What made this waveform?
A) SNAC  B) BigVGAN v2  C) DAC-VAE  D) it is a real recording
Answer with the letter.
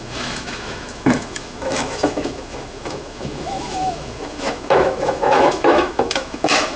C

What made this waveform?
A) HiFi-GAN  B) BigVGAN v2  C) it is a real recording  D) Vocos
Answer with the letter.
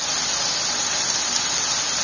C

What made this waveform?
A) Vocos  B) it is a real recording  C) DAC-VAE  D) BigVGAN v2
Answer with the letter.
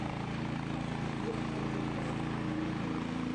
D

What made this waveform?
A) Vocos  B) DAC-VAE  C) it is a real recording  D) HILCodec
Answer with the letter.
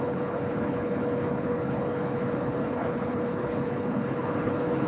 D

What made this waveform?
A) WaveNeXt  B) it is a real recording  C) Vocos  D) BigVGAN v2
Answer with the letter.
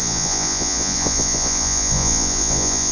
C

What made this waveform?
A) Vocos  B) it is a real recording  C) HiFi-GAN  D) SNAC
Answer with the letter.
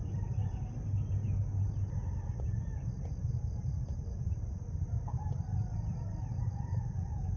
B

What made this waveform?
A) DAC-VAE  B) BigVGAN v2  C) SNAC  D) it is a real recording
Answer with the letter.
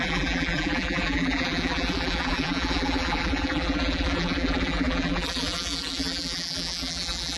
B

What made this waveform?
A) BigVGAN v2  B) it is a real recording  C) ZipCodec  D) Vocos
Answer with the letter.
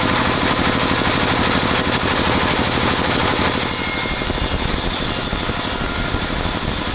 B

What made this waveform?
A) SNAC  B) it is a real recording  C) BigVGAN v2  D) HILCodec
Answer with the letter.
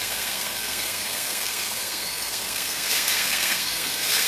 A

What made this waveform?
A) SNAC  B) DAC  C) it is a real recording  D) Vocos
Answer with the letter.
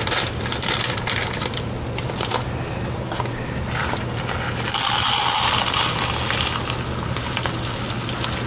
C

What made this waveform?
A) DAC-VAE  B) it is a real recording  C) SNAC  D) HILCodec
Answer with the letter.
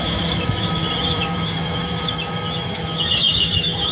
A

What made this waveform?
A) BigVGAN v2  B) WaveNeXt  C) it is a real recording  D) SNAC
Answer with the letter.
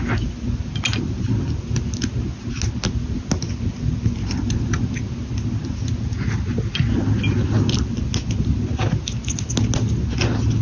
C